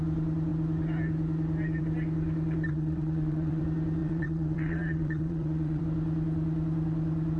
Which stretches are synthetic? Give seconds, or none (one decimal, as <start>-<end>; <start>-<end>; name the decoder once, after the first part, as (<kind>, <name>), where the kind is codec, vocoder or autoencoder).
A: 2.7-3.6 (vocoder, WaveNeXt); 4.0-5.8